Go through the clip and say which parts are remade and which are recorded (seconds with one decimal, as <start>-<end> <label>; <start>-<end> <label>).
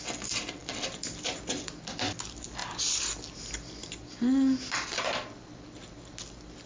0.0-6.7 recorded